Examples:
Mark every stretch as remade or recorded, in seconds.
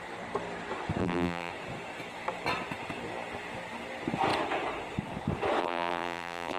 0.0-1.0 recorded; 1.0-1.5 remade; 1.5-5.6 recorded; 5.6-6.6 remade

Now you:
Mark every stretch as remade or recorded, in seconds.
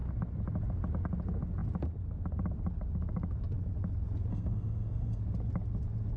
0.0-4.3 recorded; 4.3-5.2 remade; 5.2-6.2 recorded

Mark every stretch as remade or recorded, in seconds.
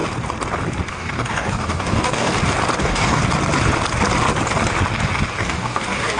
0.0-0.9 recorded; 0.9-2.3 remade; 2.3-2.8 recorded; 2.8-3.2 remade; 3.2-5.3 recorded; 5.3-6.2 remade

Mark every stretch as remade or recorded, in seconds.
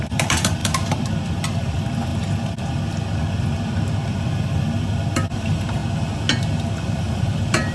0.0-2.1 remade; 2.1-4.1 recorded; 4.1-5.8 remade; 5.8-6.8 recorded; 6.8-7.7 remade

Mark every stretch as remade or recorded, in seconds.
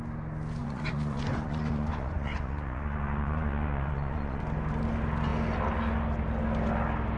0.0-0.6 recorded; 0.6-4.4 remade; 4.4-7.2 recorded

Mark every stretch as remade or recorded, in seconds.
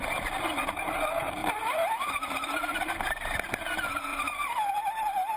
0.0-1.4 recorded; 1.4-2.9 remade; 2.9-4.1 recorded; 4.1-4.7 remade; 4.7-5.4 recorded